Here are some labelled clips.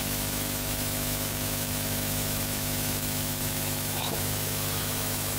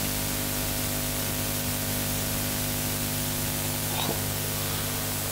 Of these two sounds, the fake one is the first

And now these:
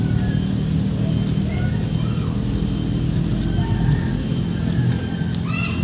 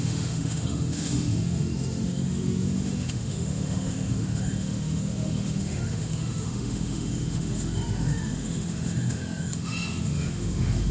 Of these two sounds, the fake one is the second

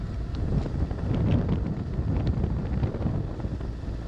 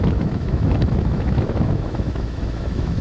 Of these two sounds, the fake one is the second